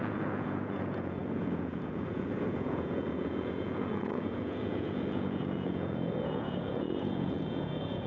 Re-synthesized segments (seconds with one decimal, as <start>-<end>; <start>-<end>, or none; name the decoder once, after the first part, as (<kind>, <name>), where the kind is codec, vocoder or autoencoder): 0.0-8.1 (vocoder, Vocos)